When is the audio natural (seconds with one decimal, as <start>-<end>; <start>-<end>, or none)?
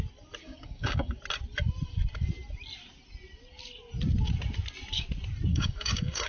0.0-0.4; 1.2-5.5